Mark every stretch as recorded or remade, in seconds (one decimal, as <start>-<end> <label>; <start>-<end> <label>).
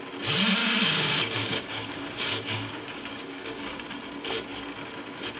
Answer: 0.0-0.6 recorded; 0.6-3.8 remade; 3.8-5.4 recorded